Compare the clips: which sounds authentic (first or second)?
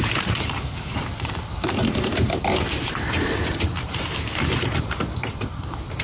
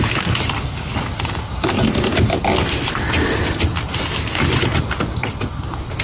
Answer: second